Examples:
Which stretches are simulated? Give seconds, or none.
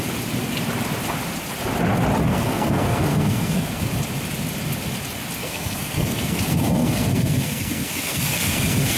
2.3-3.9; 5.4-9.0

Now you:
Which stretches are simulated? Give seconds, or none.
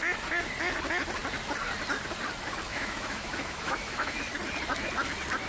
2.7-4.2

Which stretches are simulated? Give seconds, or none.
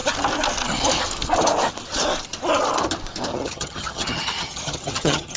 3.3-5.4